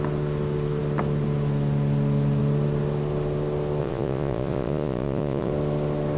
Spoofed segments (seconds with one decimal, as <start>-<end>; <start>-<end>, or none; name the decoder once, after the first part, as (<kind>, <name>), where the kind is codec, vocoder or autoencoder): 3.8-5.5 (vocoder, Vocos)